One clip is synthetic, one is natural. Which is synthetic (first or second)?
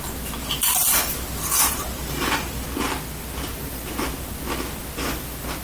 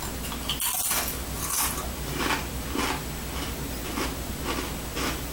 first